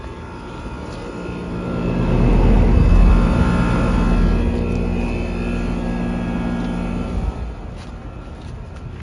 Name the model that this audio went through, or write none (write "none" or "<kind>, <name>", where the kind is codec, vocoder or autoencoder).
none